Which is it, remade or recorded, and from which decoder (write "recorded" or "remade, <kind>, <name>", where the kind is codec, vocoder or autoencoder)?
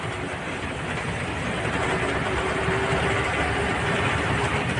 recorded